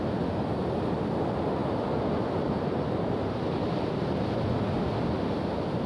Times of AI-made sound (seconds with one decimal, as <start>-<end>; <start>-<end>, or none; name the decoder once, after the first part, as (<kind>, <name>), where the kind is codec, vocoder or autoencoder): none